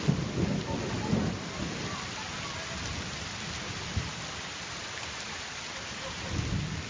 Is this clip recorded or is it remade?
remade